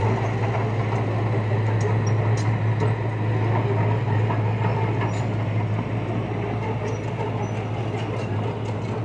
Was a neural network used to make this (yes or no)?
no